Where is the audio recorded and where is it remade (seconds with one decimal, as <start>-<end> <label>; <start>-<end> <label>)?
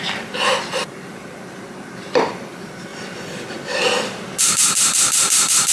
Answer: 0.0-2.9 remade; 2.9-4.4 recorded; 4.4-5.7 remade